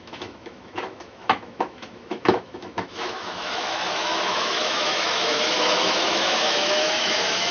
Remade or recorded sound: remade